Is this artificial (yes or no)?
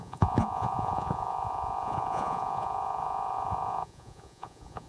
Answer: yes